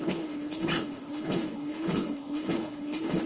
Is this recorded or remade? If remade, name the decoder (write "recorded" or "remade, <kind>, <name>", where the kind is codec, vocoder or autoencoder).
remade, codec, HILCodec